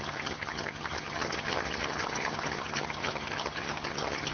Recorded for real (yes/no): no